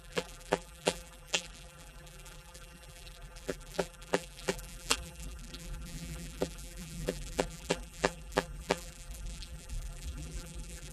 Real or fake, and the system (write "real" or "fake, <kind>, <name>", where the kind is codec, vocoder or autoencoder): fake, vocoder, BigVGAN v2